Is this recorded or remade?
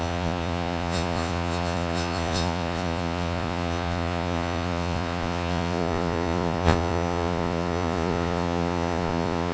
remade